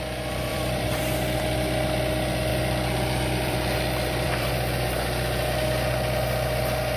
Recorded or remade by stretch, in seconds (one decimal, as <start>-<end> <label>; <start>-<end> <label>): 0.0-0.5 recorded; 0.5-1.0 remade; 1.0-2.5 recorded; 2.5-4.5 remade; 4.5-7.0 recorded